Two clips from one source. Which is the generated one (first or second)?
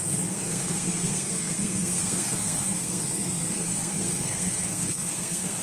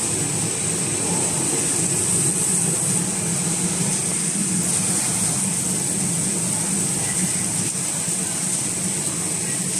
first